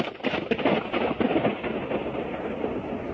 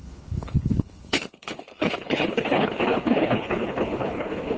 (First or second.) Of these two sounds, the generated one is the second